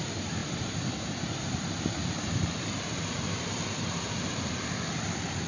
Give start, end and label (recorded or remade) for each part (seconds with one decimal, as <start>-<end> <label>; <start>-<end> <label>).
0.0-0.4 remade; 0.4-1.5 recorded; 1.5-5.5 remade